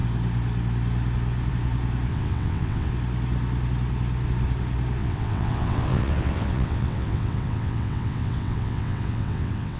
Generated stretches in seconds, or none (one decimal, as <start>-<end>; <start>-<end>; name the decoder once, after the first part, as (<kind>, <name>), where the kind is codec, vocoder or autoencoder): 2.1-2.9 (vocoder, WaveNeXt); 5.0-9.8